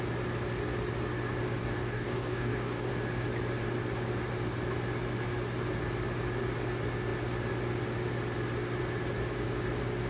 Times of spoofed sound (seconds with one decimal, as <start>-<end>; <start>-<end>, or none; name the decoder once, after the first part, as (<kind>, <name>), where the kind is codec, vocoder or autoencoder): 1.6-2.9 (codec, DAC)